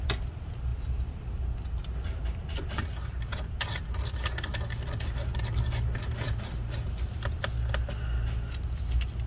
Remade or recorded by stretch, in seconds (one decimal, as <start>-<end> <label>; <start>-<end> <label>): 0.0-0.7 recorded; 0.7-1.4 remade; 1.4-9.3 recorded